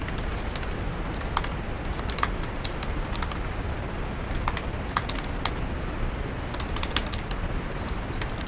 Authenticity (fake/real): real